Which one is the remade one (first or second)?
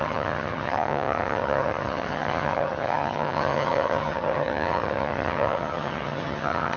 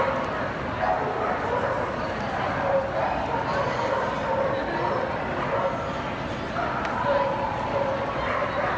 first